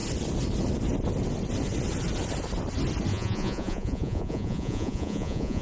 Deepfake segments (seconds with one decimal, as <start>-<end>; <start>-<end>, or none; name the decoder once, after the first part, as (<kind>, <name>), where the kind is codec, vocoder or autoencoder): 3.1-5.6 (vocoder, Vocos)